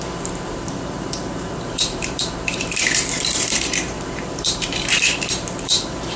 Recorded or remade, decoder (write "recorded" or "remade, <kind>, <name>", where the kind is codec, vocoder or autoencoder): remade, vocoder, BigVGAN v2